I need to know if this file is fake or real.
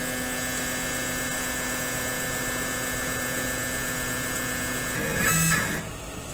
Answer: real